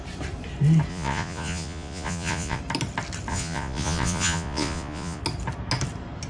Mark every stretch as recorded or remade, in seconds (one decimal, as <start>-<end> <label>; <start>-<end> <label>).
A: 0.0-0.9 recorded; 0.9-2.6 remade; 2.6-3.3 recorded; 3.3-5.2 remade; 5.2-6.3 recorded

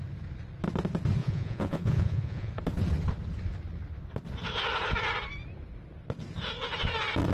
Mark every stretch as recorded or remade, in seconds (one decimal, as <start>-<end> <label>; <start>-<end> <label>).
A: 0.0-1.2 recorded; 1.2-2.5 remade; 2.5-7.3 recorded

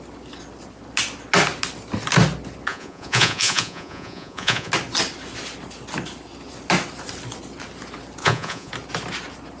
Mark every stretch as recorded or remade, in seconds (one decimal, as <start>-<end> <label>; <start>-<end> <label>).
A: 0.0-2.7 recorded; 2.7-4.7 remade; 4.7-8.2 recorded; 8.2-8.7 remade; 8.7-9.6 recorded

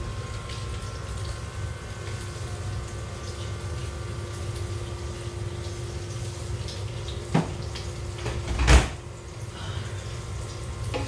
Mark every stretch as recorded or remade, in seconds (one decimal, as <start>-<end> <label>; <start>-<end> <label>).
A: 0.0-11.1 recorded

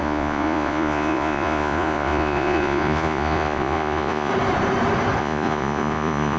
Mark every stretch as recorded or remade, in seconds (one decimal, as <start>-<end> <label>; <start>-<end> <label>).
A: 0.0-4.3 remade; 4.3-5.2 recorded; 5.2-6.4 remade